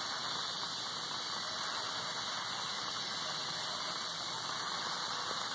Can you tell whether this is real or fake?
real